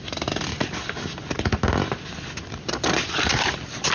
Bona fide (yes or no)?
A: yes